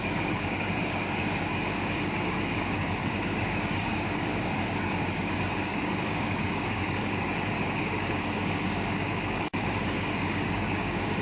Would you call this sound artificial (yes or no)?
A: yes